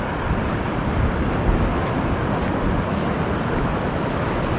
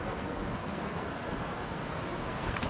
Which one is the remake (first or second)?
second